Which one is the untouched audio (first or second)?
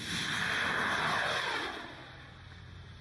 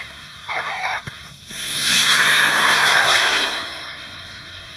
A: first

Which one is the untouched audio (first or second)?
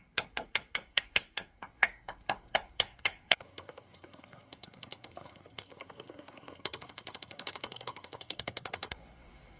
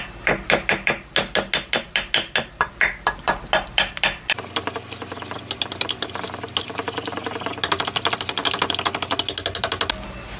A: second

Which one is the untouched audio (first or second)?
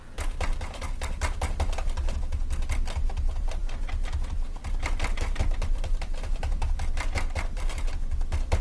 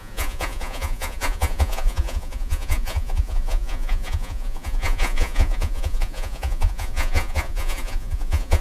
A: first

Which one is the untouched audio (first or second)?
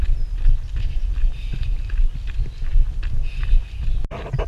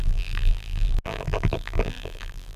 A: first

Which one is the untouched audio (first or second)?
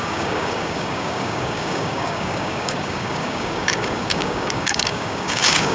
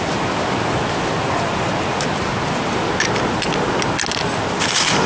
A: second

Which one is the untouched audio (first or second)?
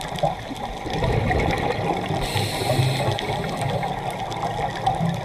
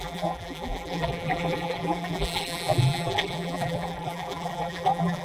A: first